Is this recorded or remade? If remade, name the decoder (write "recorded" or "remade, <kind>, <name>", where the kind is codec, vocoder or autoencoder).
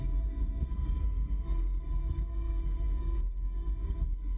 remade, codec, SNAC